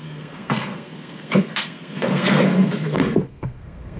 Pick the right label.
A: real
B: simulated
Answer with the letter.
B